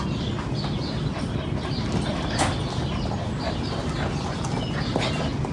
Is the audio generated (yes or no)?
no